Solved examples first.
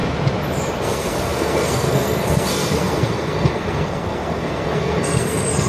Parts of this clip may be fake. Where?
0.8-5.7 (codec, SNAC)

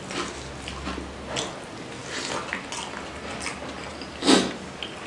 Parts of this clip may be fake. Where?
none

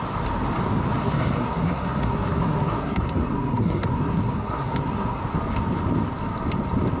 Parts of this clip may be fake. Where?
1.0-5.2 (codec, SNAC)

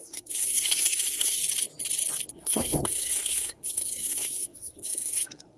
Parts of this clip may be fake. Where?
0.0-1.4 (codec, SNAC); 2.3-5.6

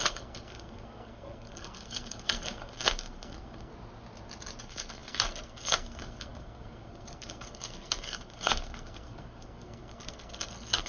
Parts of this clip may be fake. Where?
0.0-3.7 (codec, SNAC); 4.6-10.9